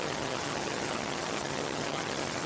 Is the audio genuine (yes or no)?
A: no